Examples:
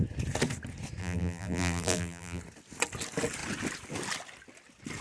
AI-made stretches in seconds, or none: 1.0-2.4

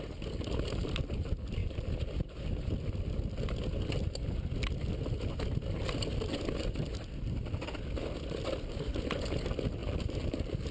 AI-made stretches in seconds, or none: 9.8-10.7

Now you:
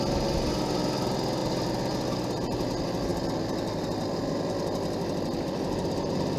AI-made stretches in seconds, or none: none